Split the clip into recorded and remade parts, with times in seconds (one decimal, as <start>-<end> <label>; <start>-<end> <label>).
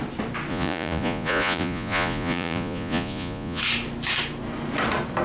0.0-0.5 recorded; 0.5-3.6 remade; 3.6-5.2 recorded